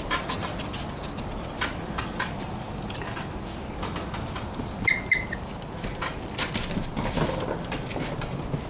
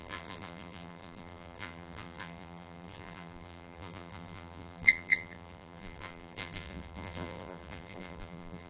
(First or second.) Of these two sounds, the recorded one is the first